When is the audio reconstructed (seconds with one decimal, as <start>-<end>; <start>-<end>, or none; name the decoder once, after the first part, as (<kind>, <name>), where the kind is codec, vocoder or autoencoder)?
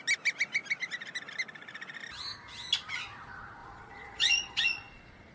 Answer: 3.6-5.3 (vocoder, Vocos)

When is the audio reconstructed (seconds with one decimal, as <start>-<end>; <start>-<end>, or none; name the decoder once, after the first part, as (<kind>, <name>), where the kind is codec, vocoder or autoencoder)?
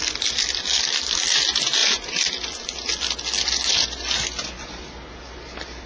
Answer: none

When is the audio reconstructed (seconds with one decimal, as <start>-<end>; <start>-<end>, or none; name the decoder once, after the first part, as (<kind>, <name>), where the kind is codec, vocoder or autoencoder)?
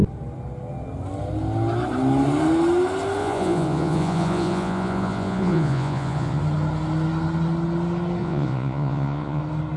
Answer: 3.2-6.4 (vocoder, Vocos); 8.2-9.4